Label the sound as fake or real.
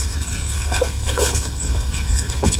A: fake